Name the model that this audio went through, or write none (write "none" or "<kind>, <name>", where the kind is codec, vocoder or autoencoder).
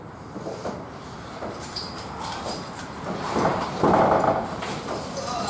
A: vocoder, BigVGAN v2